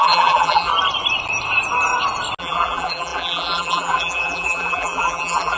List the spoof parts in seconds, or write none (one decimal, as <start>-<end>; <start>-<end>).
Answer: 0.0-0.7; 2.4-5.6